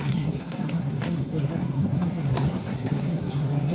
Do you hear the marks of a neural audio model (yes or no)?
yes